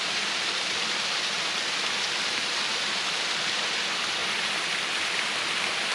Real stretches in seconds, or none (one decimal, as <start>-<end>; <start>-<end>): 4.2-5.0